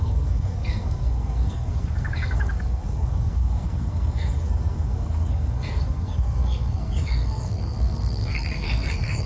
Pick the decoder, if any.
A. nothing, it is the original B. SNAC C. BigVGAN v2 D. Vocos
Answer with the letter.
B